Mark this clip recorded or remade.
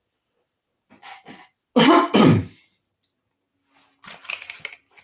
recorded